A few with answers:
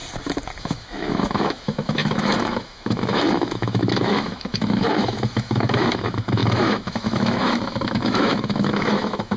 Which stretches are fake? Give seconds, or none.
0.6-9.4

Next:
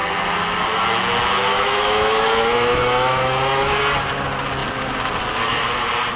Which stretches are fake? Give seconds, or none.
1.5-3.8